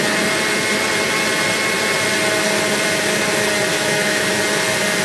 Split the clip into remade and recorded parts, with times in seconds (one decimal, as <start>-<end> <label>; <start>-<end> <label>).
0.0-3.7 recorded; 3.7-4.4 remade; 4.4-5.0 recorded